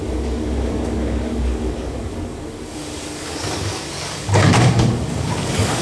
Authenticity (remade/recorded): remade